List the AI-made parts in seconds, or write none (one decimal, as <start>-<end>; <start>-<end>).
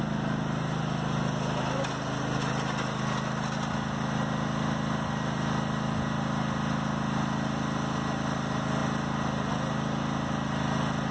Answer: none